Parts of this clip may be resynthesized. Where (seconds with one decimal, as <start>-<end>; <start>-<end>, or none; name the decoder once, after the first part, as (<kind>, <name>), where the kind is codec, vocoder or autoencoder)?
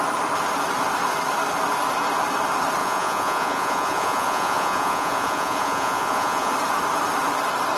2.8-6.5 (vocoder, Vocos)